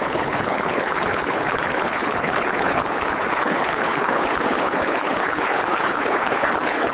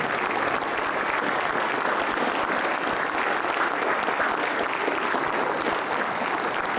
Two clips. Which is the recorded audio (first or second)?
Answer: second